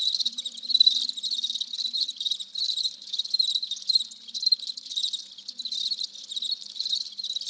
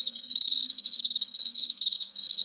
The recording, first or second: first